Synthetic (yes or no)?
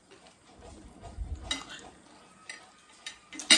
no